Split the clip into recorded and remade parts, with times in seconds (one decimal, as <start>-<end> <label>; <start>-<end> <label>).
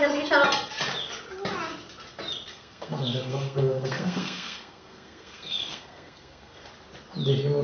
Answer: 0.0-2.5 recorded; 2.5-6.7 remade; 6.7-7.6 recorded